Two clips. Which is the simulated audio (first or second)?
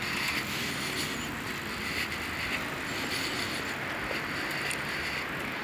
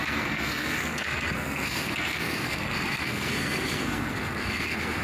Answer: second